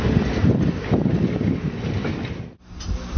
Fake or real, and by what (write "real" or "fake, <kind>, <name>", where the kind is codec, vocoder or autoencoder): real